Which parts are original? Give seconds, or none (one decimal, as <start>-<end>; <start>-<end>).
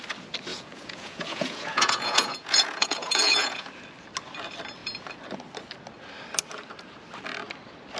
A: 0.0-0.5; 3.7-8.0